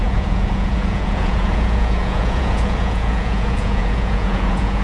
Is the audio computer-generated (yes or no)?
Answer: yes